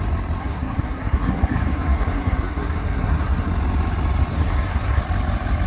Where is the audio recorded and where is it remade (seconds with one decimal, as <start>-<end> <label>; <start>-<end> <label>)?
0.0-0.4 recorded; 0.4-3.5 remade; 3.5-4.3 recorded; 4.3-5.0 remade; 5.0-5.7 recorded